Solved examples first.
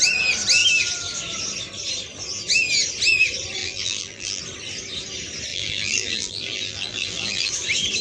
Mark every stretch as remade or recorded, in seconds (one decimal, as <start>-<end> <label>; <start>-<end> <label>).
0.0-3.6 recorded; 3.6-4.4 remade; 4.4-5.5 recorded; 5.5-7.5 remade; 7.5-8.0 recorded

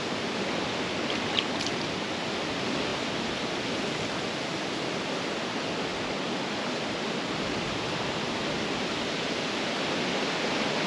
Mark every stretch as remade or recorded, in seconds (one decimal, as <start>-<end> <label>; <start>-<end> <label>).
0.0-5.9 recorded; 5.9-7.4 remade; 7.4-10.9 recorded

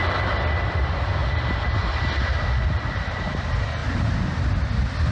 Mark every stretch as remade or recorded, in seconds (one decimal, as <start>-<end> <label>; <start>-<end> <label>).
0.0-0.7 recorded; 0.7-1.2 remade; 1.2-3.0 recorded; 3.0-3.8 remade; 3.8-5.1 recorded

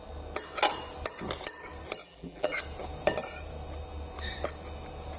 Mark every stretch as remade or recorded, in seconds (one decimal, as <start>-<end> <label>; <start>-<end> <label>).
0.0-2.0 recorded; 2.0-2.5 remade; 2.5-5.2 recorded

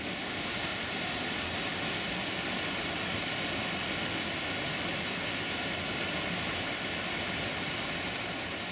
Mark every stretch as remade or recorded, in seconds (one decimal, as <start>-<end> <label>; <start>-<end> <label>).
0.0-8.7 recorded

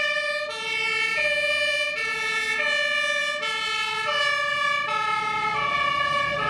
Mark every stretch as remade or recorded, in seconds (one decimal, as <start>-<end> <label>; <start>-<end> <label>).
0.0-1.1 recorded; 1.1-2.4 remade; 2.4-6.5 recorded

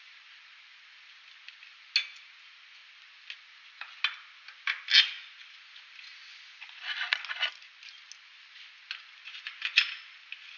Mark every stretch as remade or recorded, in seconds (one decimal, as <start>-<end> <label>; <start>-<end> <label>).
0.0-10.6 recorded

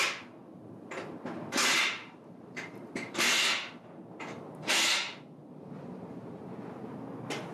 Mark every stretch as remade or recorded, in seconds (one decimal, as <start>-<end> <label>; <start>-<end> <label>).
0.0-2.0 recorded; 2.0-2.8 remade; 2.8-7.5 recorded